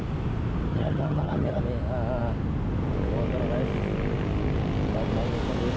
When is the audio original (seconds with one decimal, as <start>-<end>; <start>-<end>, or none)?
0.0-0.7; 1.6-5.8